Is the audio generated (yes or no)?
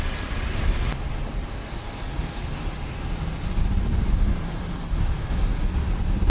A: no